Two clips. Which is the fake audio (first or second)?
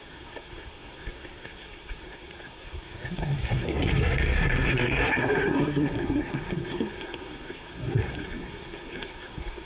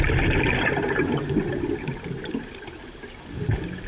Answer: first